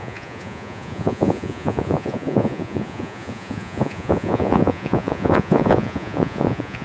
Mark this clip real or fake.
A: fake